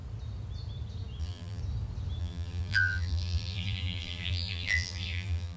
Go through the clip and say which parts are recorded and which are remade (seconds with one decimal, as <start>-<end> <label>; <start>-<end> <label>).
0.0-1.2 recorded; 1.2-1.6 remade; 1.6-2.2 recorded; 2.2-5.6 remade